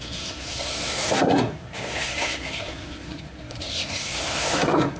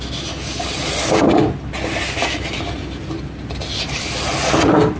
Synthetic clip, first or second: first